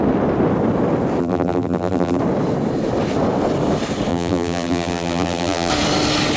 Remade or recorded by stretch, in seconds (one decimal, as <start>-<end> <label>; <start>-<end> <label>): 0.0-1.2 recorded; 1.2-2.2 remade; 2.2-4.1 recorded; 4.1-5.7 remade; 5.7-6.4 recorded